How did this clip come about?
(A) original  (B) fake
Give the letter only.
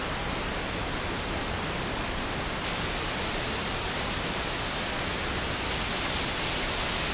A